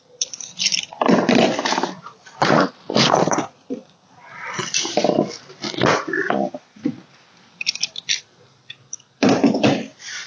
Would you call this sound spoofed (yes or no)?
yes